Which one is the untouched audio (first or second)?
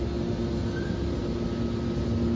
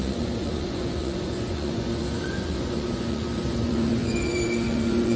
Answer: first